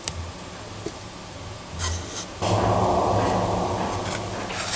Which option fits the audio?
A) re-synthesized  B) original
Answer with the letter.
B